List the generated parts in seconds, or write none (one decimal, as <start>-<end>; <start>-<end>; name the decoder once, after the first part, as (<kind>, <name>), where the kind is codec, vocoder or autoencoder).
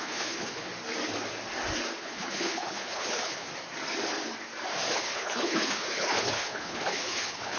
0.0-0.7 (codec, HILCodec); 2.0-3.5; 5.0-7.6